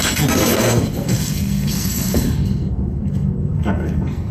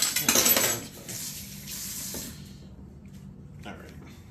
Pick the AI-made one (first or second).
first